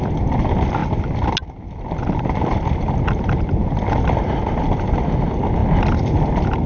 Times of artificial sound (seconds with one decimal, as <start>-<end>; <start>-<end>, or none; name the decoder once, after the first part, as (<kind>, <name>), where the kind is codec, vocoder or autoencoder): none